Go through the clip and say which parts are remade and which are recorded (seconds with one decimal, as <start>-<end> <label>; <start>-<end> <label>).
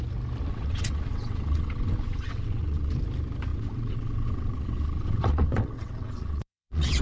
0.0-0.5 recorded; 0.5-2.9 remade; 2.9-3.5 recorded; 3.5-7.0 remade